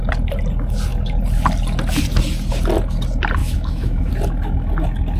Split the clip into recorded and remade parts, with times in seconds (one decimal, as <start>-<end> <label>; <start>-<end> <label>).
0.0-3.4 recorded; 3.4-4.1 remade; 4.1-5.2 recorded